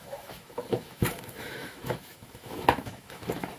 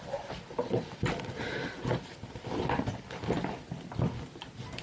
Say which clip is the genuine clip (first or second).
second